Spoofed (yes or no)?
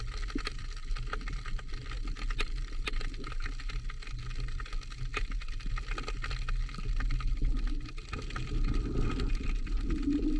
no